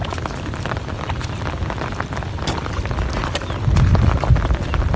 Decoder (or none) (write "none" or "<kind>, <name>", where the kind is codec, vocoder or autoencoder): none